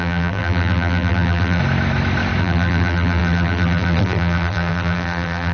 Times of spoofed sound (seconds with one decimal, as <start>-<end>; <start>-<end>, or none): 0.0-1.6; 2.4-5.5